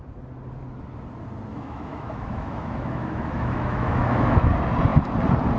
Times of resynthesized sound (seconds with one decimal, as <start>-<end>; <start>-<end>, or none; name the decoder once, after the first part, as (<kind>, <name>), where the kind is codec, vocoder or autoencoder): 1.5-4.5 (autoencoder, DAC-VAE)